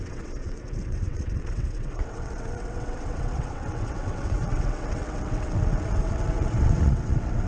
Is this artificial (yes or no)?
yes